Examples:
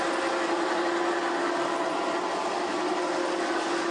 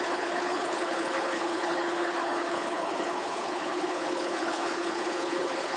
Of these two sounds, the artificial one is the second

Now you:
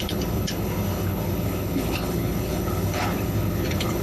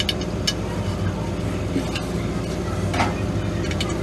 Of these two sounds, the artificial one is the first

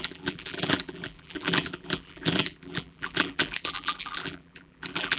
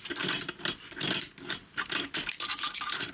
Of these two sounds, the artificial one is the first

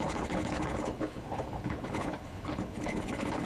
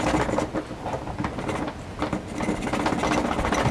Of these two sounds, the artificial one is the first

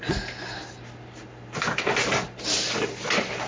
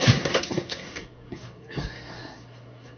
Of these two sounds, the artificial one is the second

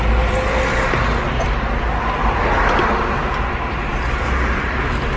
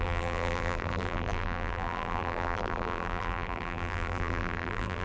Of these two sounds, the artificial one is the second